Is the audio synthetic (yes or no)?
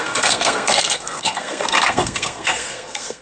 yes